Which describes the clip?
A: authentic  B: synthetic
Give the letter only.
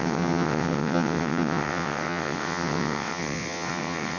B